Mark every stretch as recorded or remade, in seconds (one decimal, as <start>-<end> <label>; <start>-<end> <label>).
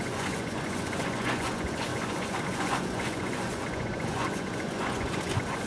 0.0-5.7 remade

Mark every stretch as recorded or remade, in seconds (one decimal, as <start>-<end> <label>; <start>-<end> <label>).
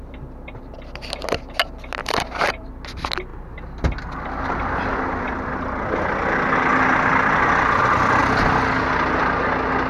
0.0-2.0 recorded; 2.0-2.7 remade; 2.7-9.9 recorded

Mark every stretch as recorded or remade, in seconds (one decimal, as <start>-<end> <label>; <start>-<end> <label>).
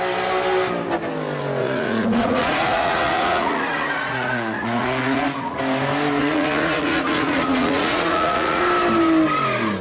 0.0-1.6 recorded; 1.6-5.6 remade; 5.6-6.2 recorded; 6.2-8.6 remade; 8.6-9.8 recorded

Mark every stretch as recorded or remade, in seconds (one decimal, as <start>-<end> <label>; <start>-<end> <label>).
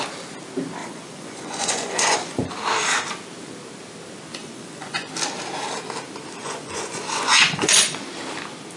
0.0-0.8 recorded; 0.8-2.5 remade; 2.5-4.4 recorded; 4.4-5.1 remade; 5.1-6.4 recorded; 6.4-8.1 remade; 8.1-8.8 recorded